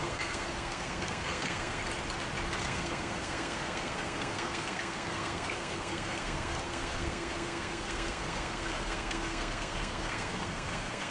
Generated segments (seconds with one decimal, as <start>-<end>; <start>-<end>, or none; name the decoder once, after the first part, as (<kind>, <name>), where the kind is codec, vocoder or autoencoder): 0.0-1.8 (codec, SNAC); 2.6-11.1